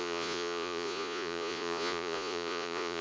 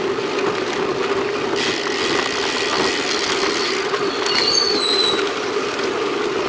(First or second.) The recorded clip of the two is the second